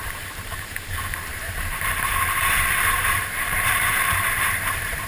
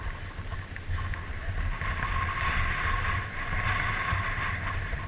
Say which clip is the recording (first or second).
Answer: second